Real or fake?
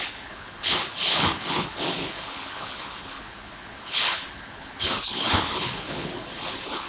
fake